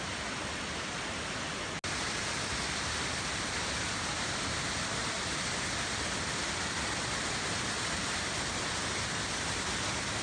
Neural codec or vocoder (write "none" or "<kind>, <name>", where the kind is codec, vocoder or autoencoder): none